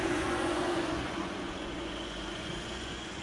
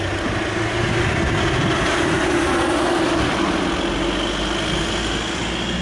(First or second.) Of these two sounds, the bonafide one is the second